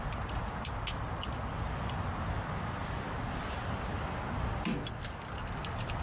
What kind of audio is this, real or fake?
real